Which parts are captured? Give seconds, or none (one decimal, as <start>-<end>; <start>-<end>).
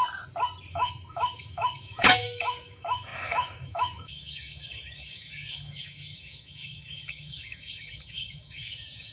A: 0.0-0.7